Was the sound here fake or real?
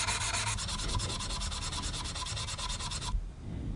real